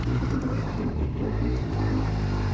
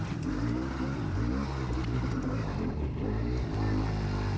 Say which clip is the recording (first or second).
second